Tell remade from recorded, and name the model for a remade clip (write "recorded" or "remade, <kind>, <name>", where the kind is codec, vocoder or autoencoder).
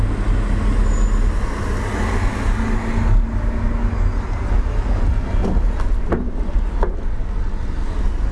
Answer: recorded